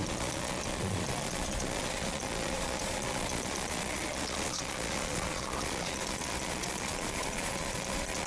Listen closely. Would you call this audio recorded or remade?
remade